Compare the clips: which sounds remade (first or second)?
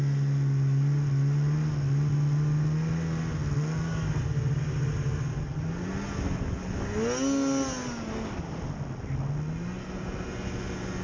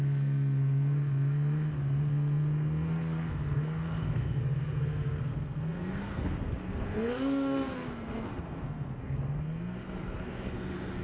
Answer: second